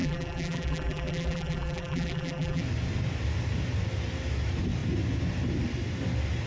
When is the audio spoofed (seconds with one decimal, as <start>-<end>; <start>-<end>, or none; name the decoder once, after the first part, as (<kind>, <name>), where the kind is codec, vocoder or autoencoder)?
0.0-2.6 (vocoder, BigVGAN v2)